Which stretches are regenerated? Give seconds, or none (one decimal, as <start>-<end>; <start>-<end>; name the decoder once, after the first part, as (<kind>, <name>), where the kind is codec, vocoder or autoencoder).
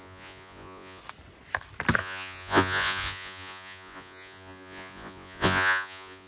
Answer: 0.0-1.0 (vocoder, Vocos); 2.0-6.3